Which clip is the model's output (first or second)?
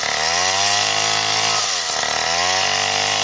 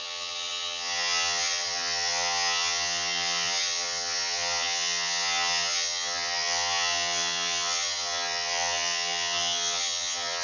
second